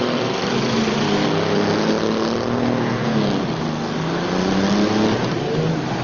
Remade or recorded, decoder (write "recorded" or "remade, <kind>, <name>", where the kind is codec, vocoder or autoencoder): recorded